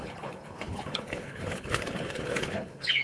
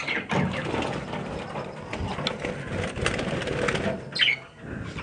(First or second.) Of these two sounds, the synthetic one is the first